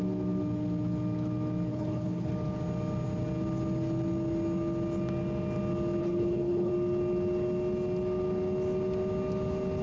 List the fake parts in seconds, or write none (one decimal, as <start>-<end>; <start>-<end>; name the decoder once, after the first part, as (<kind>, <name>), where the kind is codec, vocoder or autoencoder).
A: 1.7-2.3 (codec, HILCodec); 6.0-6.7